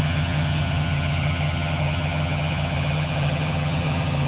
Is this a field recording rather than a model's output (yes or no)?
no